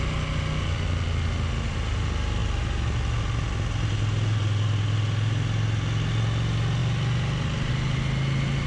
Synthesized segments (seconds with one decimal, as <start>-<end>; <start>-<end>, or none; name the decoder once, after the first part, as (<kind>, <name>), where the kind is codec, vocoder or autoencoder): none